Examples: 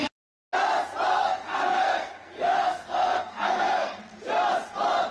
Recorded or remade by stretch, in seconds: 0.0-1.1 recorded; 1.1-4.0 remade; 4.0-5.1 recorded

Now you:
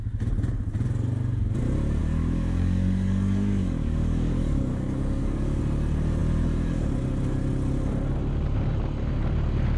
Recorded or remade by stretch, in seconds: 0.0-2.0 recorded; 2.0-5.6 remade; 5.6-9.8 recorded

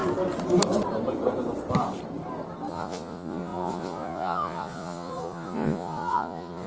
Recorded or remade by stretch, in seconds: 0.0-2.7 recorded; 2.7-6.7 remade